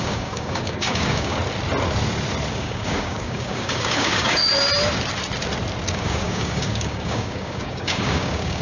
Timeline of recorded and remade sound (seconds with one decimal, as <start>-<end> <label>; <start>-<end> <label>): 0.0-1.4 remade; 1.4-2.5 recorded; 2.5-4.4 remade; 4.4-5.9 recorded; 5.9-8.6 remade